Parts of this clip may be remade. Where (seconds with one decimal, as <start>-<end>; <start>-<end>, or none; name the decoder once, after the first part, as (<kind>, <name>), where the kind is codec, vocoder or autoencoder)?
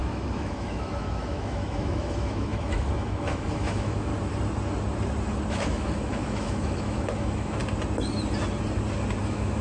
0.0-4.1 (autoencoder, DAC-VAE); 5.5-7.6; 9.2-9.6